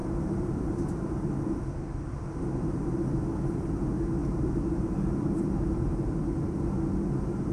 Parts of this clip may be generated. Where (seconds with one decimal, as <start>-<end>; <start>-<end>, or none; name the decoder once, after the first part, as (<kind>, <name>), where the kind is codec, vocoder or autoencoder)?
0.0-1.3 (vocoder, BigVGAN v2); 4.2-5.5